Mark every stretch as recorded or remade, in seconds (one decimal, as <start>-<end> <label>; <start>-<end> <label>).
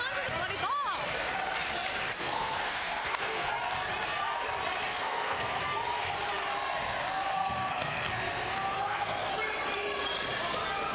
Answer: 0.0-2.2 recorded; 2.2-3.5 remade; 3.5-4.9 recorded; 4.9-5.6 remade; 5.6-7.3 recorded; 7.3-9.3 remade; 9.3-10.9 recorded